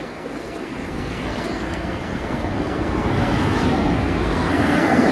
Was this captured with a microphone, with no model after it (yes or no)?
no